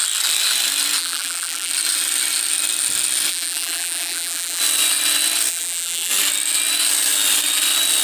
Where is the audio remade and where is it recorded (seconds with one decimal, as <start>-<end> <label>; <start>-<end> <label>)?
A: 0.0-1.0 recorded; 1.0-1.7 remade; 1.7-3.3 recorded; 3.3-4.6 remade; 4.6-5.5 recorded; 5.5-6.1 remade; 6.1-8.0 recorded